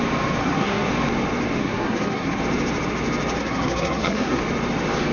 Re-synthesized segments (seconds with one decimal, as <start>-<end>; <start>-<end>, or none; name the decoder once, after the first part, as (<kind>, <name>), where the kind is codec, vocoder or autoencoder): 0.4-0.9 (codec, SNAC); 1.6-2.4; 3.4-4.4